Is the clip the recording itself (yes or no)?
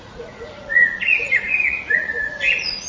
no